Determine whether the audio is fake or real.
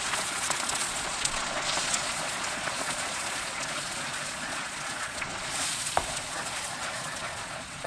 fake